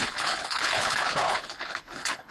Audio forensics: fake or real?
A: fake